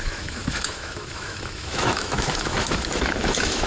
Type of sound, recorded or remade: remade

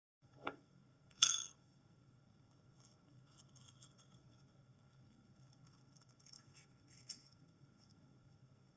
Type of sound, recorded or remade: remade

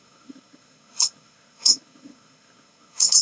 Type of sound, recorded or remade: remade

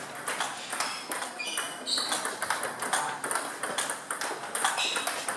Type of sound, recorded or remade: recorded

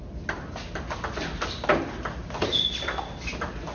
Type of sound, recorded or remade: recorded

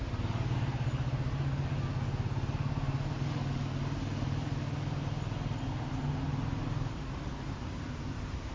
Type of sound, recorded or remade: recorded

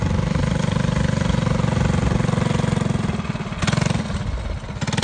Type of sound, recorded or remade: recorded